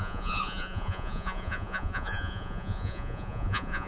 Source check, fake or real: fake